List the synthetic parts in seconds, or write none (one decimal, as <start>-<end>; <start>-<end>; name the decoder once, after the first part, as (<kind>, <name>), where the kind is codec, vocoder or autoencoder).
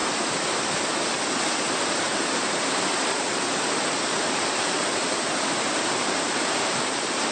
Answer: 1.7-7.3 (vocoder, BigVGAN v2)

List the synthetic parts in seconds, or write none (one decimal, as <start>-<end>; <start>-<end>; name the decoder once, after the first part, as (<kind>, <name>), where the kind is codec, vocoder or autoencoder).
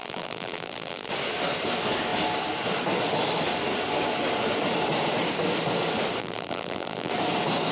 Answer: 0.0-1.1 (vocoder, BigVGAN v2); 6.2-7.1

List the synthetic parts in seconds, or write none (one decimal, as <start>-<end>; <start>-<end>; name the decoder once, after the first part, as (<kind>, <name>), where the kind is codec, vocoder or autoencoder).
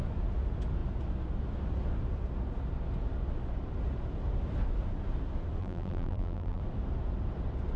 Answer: 5.6-6.6 (vocoder, BigVGAN v2)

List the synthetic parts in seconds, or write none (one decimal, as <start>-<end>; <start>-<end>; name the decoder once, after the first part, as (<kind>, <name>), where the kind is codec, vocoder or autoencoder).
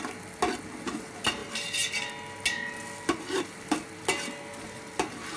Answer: none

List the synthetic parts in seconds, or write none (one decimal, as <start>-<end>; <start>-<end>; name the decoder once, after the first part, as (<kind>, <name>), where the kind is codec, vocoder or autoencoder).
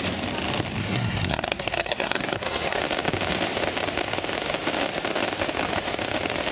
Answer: 0.8-2.8 (codec, SNAC)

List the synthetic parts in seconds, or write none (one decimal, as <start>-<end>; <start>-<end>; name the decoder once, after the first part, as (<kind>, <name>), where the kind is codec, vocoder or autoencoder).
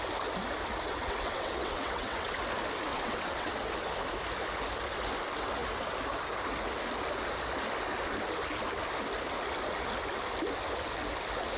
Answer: 0.9-2.4 (vocoder, WaveNeXt); 2.9-3.5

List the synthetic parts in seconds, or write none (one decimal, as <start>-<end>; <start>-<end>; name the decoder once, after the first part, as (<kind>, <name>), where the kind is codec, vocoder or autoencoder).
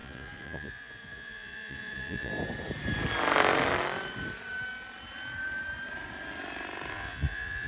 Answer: 0.0-2.3 (vocoder, Vocos); 6.9-7.7